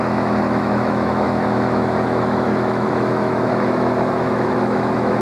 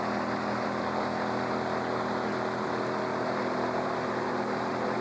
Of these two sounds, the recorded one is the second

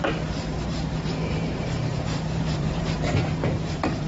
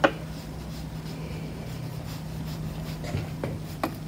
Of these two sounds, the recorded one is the second